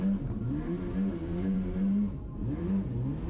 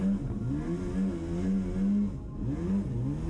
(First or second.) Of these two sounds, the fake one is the first